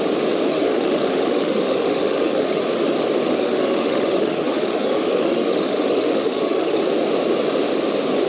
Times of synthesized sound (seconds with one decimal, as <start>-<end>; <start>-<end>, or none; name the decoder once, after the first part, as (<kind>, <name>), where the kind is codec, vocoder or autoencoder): 0.5-2.6 (autoencoder, DAC-VAE); 3.3-6.8